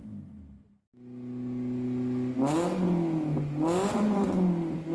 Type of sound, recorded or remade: recorded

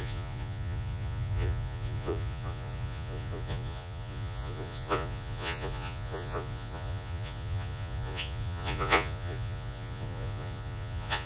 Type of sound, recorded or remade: remade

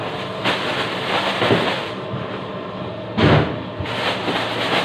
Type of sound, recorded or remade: recorded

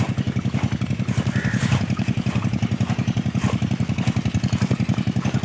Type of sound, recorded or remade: recorded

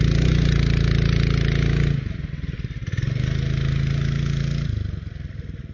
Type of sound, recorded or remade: recorded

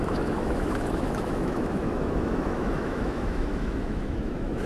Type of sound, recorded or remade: remade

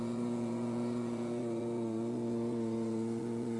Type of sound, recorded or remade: remade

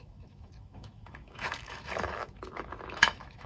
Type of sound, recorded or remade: remade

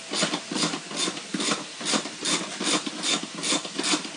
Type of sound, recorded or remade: recorded